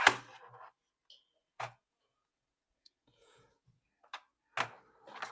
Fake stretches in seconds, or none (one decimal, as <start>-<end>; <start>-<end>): 1.4-3.8